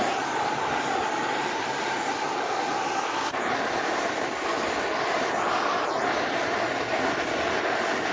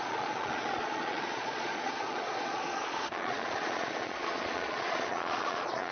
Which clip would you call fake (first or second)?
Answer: second